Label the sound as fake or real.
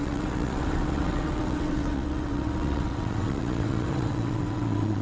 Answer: fake